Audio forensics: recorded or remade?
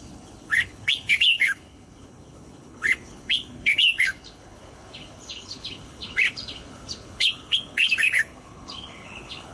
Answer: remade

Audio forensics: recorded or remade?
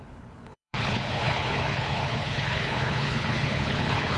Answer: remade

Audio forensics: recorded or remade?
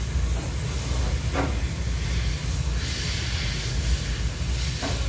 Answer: recorded